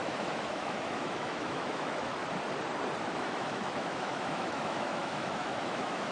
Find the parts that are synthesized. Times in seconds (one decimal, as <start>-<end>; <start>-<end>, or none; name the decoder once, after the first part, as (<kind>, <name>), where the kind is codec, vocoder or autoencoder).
0.0-2.2 (autoencoder, DAC-VAE); 3.0-6.1